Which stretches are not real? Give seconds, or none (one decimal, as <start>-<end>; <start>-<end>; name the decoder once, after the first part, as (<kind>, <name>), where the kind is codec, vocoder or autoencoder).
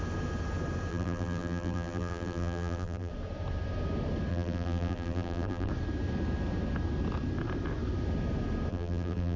0.9-3.1 (vocoder, BigVGAN v2); 4.3-5.7; 8.7-9.4